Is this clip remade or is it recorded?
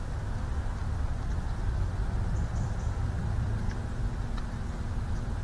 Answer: recorded